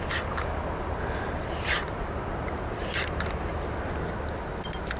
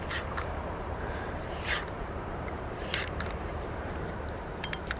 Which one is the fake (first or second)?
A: second